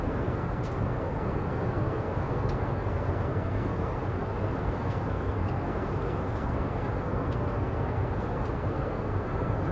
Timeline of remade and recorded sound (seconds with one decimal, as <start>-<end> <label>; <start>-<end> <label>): 0.0-9.7 remade